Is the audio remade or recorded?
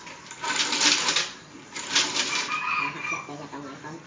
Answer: recorded